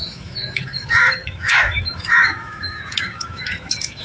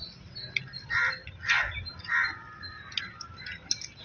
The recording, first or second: second